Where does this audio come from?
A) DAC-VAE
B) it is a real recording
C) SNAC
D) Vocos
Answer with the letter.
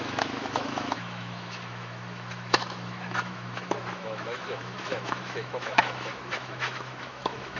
A